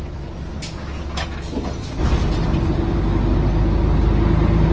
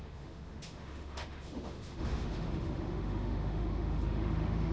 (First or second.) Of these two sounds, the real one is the first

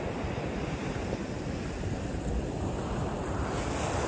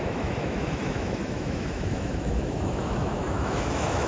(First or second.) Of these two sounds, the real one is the first